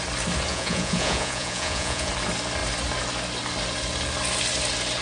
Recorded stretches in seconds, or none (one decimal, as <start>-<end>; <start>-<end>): 0.0-0.5; 2.1-5.0